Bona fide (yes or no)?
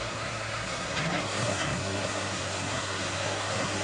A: no